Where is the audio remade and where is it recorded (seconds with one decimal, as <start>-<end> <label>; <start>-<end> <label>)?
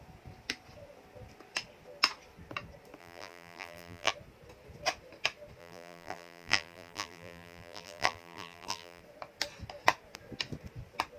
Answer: 0.0-3.0 recorded; 3.0-4.1 remade; 4.1-5.6 recorded; 5.6-9.0 remade; 9.0-11.2 recorded